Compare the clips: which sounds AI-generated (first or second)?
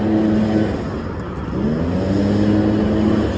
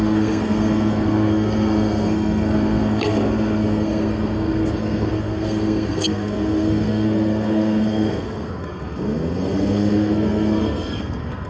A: second